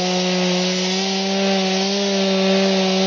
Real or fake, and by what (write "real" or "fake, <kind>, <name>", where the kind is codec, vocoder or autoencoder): real